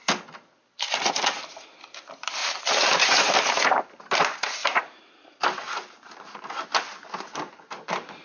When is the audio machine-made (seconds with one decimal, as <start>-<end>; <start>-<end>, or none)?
2.4-3.3; 4.6-6.4